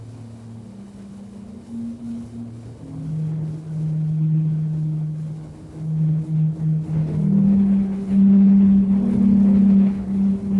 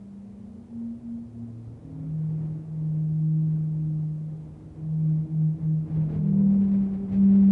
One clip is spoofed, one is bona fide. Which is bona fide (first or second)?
second